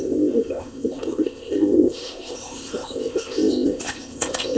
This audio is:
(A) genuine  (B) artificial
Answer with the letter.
B